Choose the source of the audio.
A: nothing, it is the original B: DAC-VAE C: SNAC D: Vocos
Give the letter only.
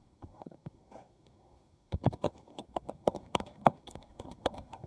C